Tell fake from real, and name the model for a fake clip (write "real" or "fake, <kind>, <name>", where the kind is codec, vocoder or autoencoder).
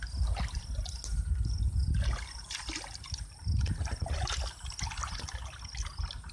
real